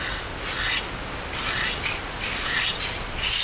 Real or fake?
real